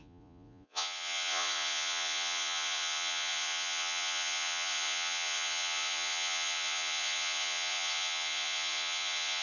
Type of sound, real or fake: fake